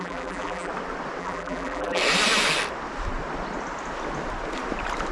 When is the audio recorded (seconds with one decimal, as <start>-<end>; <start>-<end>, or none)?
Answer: 0.7-1.2; 2.0-5.1